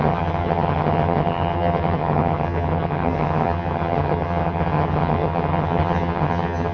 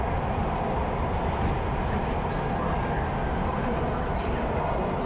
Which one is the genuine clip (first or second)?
second